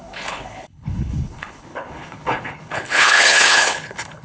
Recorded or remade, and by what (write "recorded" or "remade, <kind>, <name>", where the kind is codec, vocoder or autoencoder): remade, codec, HILCodec